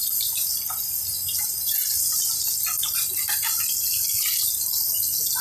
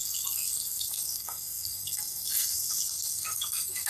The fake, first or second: second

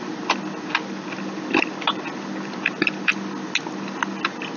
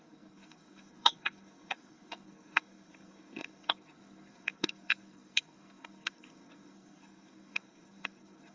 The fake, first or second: second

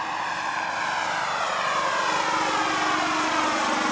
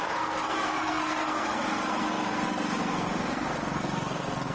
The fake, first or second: second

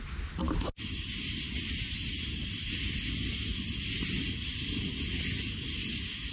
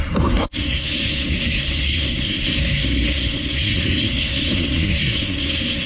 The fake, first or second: second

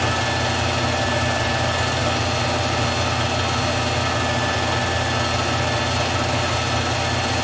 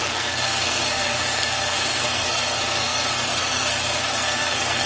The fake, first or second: second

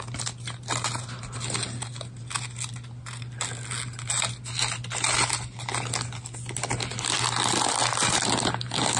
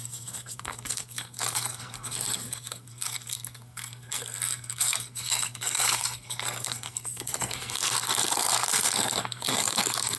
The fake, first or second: second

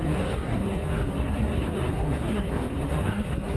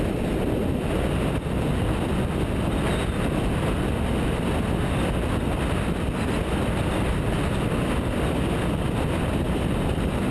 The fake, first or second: first